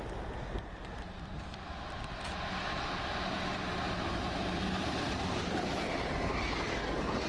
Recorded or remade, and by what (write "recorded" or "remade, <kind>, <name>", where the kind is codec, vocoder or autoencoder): recorded